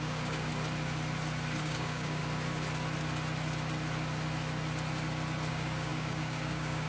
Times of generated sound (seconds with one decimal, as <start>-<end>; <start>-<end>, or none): 0.0-0.5; 1.6-2.2; 5.5-6.9